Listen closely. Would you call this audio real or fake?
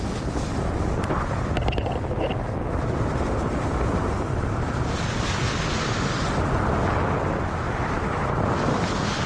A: real